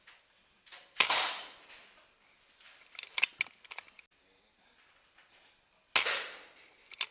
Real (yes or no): yes